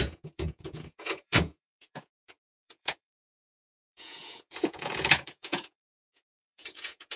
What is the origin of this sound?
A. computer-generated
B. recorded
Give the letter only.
A